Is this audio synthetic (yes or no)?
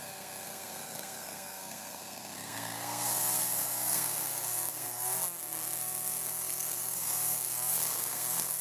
yes